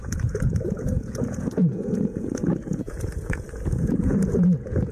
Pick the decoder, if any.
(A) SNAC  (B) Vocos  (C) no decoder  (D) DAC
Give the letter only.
B